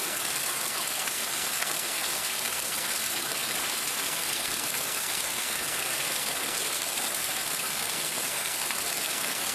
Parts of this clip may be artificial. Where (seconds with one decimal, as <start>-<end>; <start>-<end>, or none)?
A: 0.0-9.5